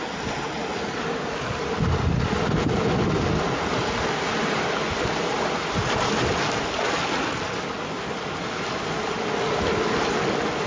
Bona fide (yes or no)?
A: yes